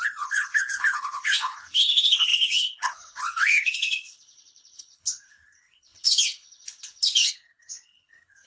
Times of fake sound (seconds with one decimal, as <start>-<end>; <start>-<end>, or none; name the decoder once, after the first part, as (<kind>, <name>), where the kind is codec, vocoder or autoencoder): 0.0-8.5 (codec, HILCodec)

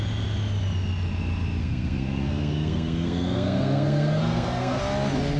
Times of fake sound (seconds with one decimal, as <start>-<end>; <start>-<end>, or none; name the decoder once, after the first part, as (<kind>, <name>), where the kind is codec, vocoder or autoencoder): 1.6-4.8 (codec, SNAC)

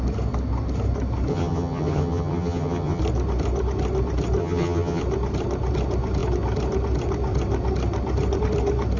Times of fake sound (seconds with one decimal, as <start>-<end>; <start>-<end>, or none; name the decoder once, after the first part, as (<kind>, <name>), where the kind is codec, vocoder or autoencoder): 1.3-3.0 (vocoder, HiFi-GAN); 4.4-5.0

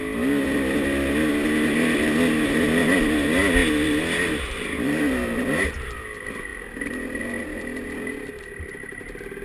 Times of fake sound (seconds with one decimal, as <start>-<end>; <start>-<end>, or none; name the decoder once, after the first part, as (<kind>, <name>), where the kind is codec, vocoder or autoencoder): none

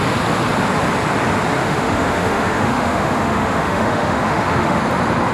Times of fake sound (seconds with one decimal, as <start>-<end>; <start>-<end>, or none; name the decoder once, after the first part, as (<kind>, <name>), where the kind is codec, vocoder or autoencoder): 1.6-4.8 (autoencoder, DAC-VAE)

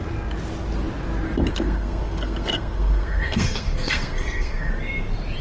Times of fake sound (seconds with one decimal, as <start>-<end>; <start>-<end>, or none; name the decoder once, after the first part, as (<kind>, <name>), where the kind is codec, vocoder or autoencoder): 1.5-4.7 (codec, SNAC)

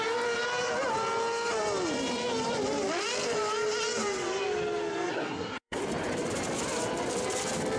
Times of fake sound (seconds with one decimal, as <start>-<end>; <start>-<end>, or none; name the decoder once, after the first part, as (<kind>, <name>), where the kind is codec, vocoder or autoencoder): 5.1-5.8 (codec, SNAC)